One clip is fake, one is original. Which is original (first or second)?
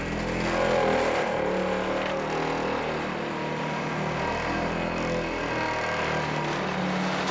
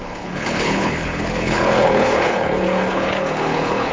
first